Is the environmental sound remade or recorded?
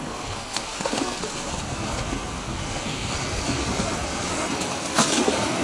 remade